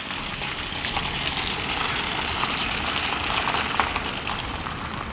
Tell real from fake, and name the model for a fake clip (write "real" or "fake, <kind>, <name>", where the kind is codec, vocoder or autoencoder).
real